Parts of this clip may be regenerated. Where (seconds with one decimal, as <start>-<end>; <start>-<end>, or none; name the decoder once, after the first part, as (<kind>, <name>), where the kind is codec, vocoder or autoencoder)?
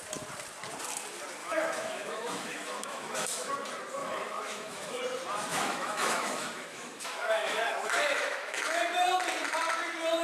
1.4-3.5 (autoencoder, DAC-VAE); 4.0-5.0; 5.5-8.8